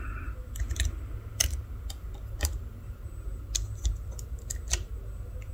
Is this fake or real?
real